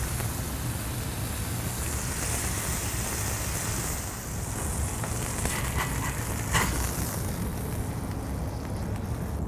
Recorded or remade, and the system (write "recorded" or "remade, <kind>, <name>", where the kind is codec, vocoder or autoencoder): recorded